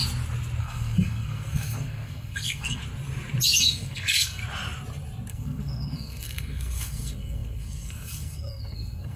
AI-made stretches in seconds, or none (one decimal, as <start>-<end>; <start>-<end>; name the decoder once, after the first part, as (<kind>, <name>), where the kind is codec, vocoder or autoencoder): 0.6-2.8 (codec, SNAC); 3.6-4.4; 5.3-9.2